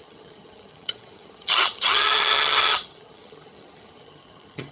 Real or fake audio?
fake